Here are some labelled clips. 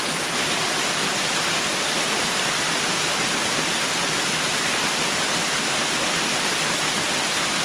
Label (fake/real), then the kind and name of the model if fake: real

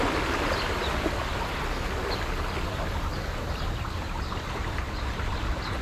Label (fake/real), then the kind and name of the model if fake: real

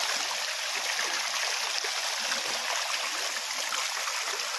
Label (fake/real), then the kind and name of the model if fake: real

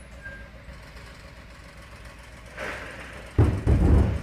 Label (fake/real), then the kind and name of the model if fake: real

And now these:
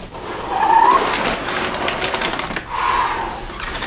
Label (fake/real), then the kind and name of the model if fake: real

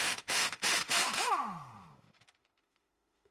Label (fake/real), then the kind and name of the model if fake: fake, autoencoder, DAC-VAE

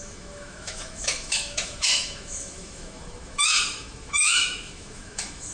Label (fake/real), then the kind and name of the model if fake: fake, autoencoder, DAC-VAE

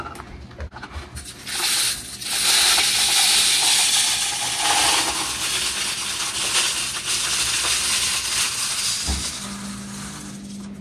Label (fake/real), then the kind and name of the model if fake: real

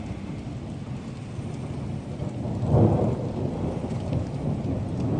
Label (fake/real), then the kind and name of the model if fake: real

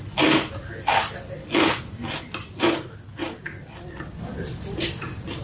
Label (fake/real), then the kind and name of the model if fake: real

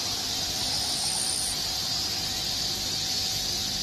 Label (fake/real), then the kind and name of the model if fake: real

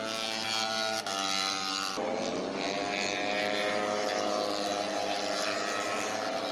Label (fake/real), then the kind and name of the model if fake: real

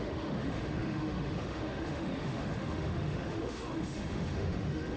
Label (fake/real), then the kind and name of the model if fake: fake, autoencoder, DAC-VAE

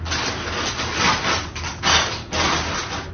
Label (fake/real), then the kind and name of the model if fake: real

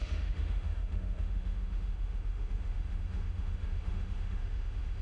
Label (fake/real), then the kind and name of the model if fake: fake, autoencoder, DAC-VAE